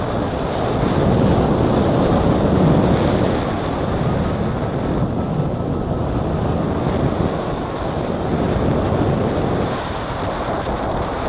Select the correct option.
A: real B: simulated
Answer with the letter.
A